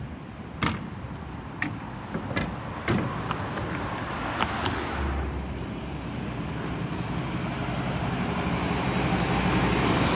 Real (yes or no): yes